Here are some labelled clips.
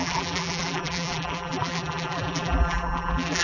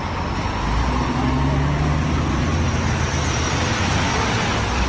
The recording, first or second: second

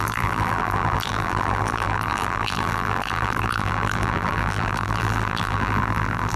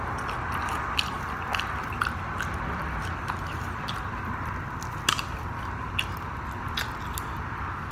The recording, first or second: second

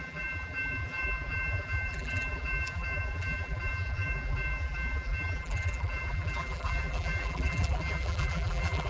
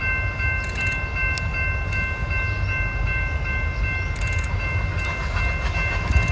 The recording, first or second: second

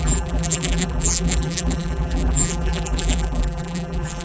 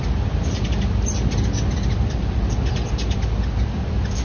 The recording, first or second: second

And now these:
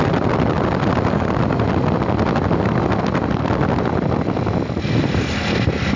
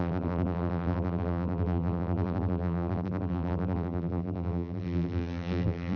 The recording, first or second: first